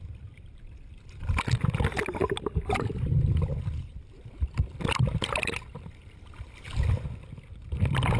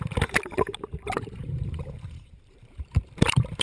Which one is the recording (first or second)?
first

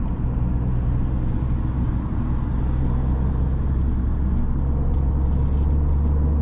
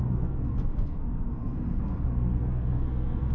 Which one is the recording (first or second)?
first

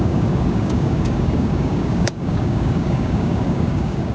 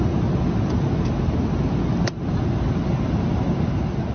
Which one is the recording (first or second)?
second